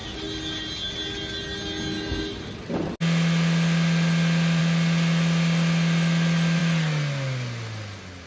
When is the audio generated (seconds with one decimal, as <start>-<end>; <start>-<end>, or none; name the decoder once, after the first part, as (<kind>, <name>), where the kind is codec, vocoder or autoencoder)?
none